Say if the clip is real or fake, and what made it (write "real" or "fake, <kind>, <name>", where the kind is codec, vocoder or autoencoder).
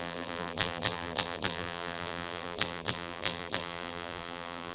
fake, vocoder, BigVGAN v2